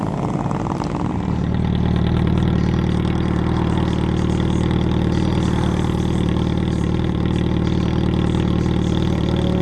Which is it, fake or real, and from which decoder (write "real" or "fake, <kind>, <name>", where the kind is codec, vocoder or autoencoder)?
real